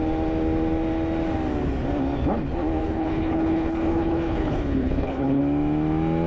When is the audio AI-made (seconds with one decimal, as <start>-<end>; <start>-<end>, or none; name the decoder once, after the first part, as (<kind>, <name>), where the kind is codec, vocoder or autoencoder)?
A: 2.8-5.4 (codec, HILCodec)